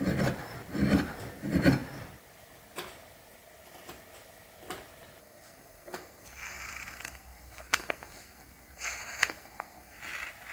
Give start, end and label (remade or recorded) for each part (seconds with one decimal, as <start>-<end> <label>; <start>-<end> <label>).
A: 0.0-5.2 recorded; 5.2-10.0 remade; 10.0-10.5 recorded